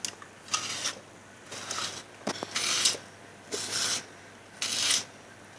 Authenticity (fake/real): real